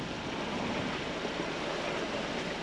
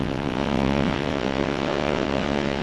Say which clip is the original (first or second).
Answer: first